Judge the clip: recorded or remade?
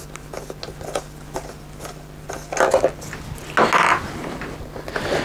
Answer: recorded